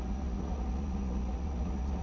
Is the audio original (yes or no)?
no